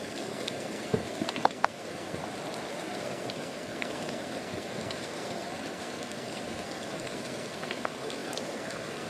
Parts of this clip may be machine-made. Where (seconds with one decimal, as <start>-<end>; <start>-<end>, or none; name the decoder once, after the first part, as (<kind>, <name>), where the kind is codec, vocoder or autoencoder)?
0.0-2.2 (codec, SNAC); 2.7-9.1